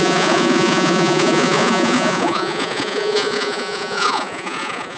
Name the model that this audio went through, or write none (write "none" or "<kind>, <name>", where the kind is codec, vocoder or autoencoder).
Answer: vocoder, Vocos